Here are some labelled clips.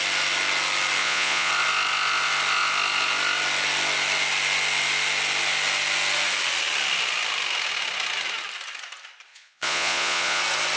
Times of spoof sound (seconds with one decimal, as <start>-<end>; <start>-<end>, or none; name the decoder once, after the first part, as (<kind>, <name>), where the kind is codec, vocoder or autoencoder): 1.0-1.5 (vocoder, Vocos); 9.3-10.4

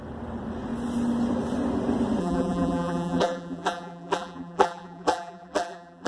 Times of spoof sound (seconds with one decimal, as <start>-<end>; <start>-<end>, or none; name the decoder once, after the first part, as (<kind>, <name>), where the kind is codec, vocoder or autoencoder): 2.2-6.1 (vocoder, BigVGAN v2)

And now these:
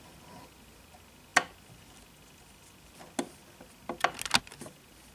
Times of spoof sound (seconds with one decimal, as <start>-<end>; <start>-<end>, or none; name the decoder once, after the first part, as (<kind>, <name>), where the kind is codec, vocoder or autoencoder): none

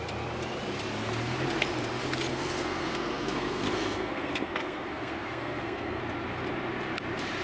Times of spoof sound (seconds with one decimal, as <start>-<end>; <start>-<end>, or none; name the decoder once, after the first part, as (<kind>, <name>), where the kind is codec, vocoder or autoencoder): 2.3-6.0 (codec, SNAC)

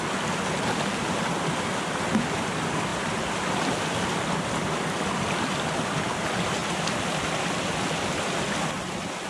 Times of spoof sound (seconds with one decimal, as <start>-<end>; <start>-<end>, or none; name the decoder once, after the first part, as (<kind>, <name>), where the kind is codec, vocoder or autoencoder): none

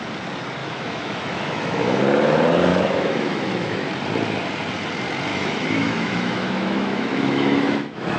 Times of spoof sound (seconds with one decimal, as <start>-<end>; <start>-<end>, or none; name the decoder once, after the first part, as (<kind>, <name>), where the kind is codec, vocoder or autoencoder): 0.6-2.0 (autoencoder, DAC-VAE); 2.7-3.9; 5.3-8.2

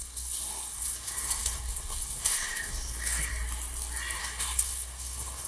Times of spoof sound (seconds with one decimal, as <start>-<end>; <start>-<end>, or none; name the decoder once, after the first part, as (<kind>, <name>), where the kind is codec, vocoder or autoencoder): 0.0-3.3 (codec, SNAC); 4.2-5.5